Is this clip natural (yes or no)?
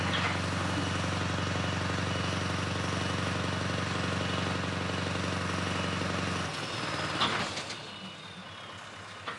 yes